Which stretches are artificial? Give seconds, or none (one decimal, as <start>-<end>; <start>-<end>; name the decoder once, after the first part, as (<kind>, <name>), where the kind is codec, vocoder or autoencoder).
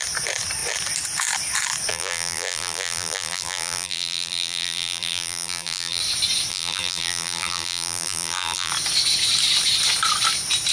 1.9-6.0 (vocoder, BigVGAN v2); 6.5-8.7